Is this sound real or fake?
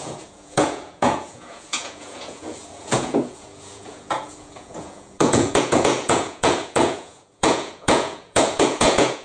fake